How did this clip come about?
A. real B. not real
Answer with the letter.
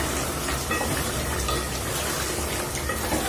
A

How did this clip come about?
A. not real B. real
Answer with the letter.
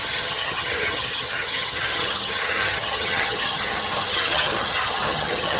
A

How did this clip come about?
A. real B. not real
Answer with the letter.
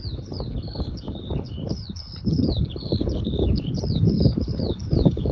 B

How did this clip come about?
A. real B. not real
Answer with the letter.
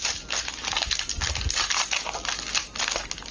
A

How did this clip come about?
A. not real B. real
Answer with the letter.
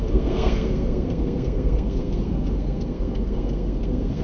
A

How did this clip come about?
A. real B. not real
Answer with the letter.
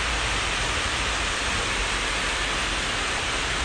B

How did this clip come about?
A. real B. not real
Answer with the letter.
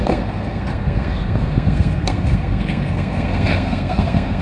B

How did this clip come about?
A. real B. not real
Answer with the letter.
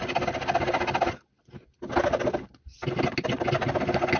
A